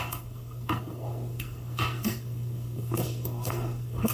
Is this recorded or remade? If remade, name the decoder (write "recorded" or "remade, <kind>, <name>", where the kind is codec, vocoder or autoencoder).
remade, codec, SNAC